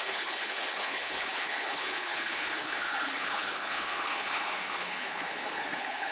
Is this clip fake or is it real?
fake